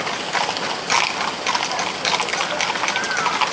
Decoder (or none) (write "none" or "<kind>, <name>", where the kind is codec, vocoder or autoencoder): none